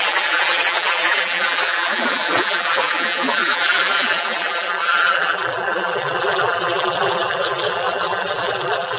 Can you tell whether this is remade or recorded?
remade